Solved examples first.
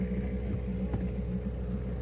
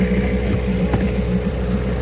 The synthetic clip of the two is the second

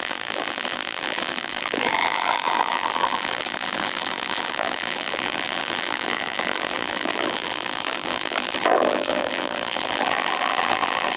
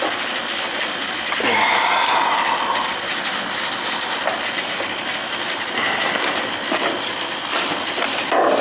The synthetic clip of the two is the first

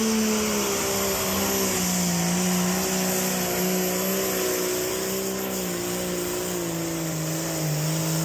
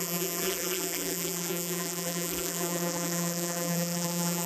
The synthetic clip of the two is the second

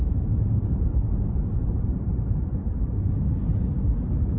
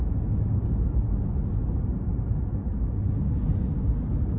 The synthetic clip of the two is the first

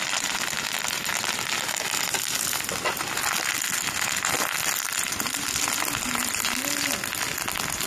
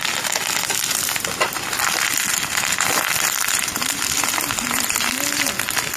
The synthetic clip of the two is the second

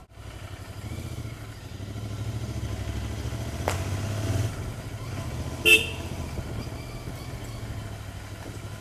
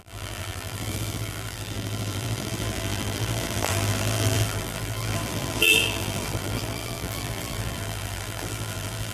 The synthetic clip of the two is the second